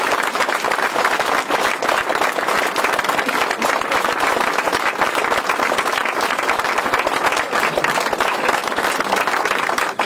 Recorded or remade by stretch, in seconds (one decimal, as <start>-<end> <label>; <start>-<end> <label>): 0.0-10.1 recorded